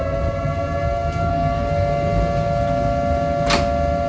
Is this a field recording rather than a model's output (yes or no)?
yes